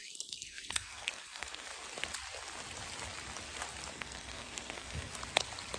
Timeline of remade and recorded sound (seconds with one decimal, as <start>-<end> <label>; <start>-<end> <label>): 0.0-1.7 remade; 1.7-3.9 recorded; 3.9-5.1 remade; 5.1-5.8 recorded